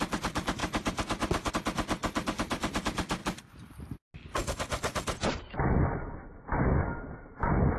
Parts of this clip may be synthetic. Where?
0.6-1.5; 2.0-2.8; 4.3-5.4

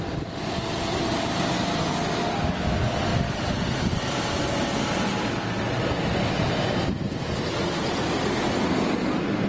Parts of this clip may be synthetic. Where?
none

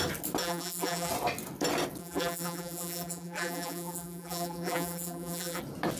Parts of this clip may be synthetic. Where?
0.4-1.1; 2.0-5.6